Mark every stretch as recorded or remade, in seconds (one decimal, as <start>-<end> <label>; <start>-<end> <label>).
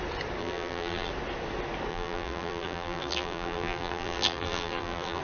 0.0-0.4 recorded; 0.4-1.1 remade; 1.1-1.9 recorded; 1.9-5.2 remade